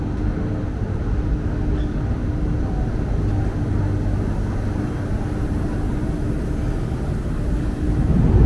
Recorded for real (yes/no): yes